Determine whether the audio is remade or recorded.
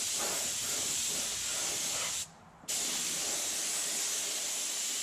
recorded